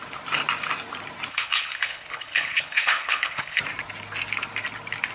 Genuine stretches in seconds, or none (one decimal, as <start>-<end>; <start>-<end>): 0.0-1.3; 3.6-5.1